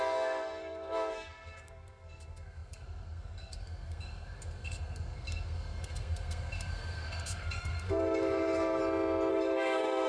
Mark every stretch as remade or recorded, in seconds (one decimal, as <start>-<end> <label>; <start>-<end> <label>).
0.0-8.8 remade; 8.8-9.3 recorded; 9.3-10.1 remade